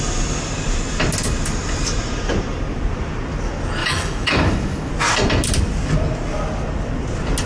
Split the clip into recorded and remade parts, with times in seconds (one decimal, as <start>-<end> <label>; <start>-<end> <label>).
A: 0.0-3.8 recorded; 3.8-4.9 remade; 4.9-7.5 recorded

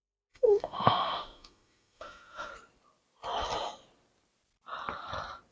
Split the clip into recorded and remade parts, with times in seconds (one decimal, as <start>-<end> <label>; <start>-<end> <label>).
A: 0.0-2.5 remade; 2.5-5.5 recorded

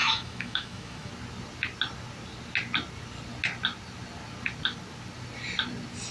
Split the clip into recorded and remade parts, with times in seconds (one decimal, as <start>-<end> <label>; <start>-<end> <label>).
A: 0.0-1.1 remade; 1.1-6.1 recorded